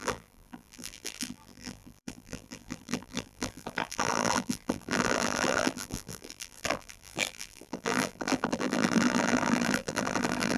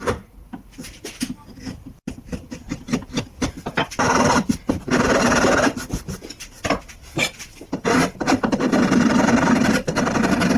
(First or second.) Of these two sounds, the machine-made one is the first